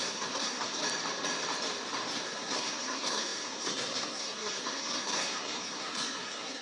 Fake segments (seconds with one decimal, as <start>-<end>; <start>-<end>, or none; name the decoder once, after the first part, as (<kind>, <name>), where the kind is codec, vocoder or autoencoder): 0.0-0.8 (codec, SNAC); 2.2-6.6